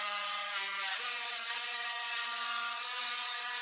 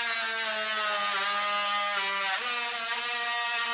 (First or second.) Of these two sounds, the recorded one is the second